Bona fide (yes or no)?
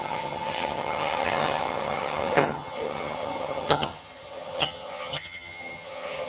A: no